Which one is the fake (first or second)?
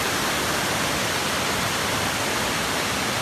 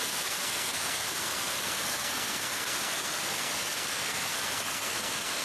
second